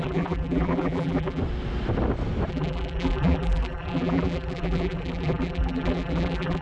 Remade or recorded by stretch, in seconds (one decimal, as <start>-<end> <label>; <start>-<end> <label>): 0.0-1.4 remade; 1.4-2.5 recorded; 2.5-6.6 remade